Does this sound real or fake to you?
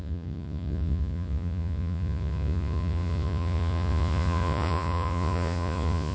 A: fake